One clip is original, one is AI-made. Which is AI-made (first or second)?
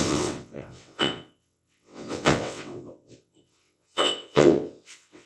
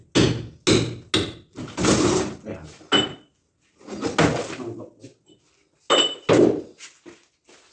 first